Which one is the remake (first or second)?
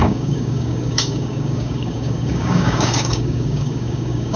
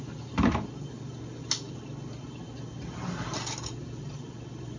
first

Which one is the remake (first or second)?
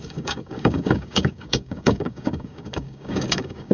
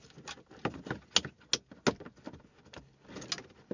first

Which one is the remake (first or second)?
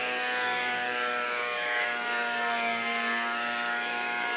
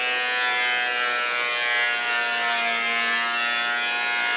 first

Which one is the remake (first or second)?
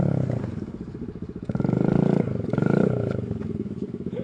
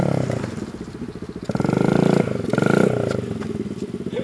first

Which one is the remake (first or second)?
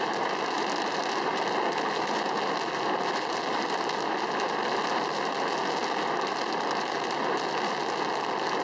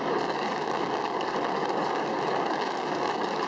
second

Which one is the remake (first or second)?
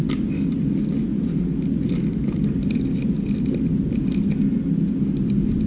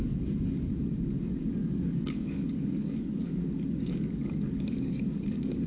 second